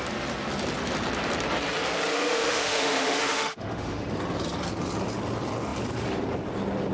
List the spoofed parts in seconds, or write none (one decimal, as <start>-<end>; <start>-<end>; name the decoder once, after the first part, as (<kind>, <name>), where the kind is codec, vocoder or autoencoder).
2.1-4.1 (autoencoder, DAC-VAE)